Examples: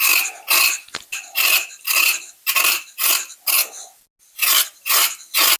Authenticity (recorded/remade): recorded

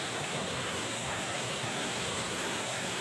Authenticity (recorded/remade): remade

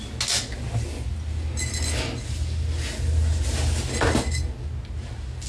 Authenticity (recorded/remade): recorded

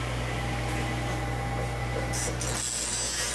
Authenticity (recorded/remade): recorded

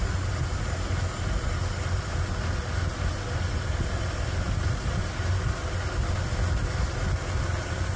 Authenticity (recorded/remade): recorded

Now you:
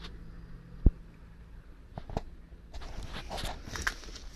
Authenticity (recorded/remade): recorded